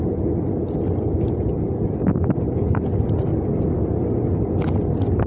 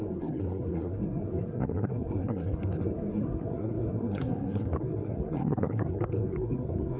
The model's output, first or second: second